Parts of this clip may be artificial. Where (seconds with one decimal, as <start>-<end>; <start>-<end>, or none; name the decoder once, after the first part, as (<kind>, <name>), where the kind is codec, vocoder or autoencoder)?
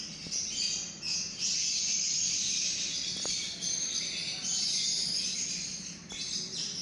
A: 1.6-2.1 (vocoder, Vocos)